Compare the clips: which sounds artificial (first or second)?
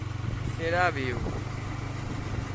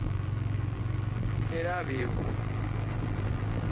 second